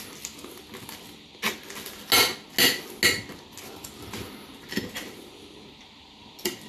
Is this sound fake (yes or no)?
no